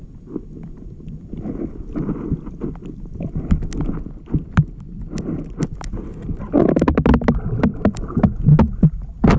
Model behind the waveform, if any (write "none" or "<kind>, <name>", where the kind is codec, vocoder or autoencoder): none